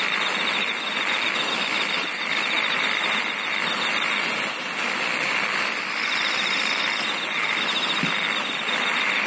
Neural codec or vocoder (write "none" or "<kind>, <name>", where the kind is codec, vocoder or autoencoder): none